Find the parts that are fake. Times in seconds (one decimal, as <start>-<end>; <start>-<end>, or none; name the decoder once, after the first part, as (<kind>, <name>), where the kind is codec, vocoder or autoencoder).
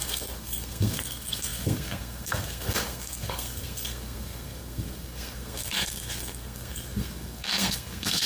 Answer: 0.0-8.3 (codec, SNAC)